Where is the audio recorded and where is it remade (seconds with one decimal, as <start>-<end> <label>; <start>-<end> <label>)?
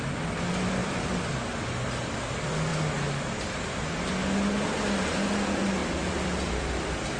0.0-0.8 recorded; 0.8-2.1 remade; 2.1-5.8 recorded; 5.8-6.7 remade; 6.7-7.2 recorded